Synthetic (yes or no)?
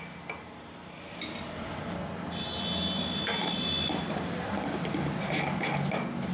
no